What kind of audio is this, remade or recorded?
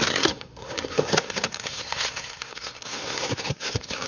remade